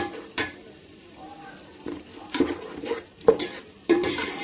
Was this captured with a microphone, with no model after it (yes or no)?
no